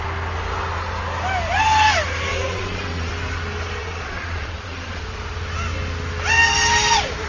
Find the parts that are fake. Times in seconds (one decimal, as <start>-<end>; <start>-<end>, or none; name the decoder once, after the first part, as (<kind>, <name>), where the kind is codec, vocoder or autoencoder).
2.3-3.1 (vocoder, Vocos); 3.8-5.0